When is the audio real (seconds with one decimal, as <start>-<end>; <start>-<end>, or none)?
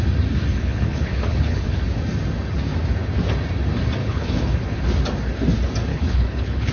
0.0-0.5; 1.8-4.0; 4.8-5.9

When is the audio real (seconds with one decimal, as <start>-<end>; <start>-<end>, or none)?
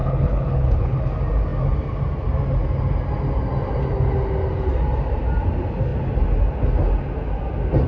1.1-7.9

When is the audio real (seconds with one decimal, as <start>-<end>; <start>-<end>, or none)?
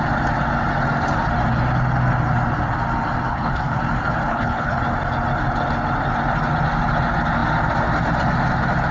0.0-3.3; 3.8-4.3; 4.8-8.9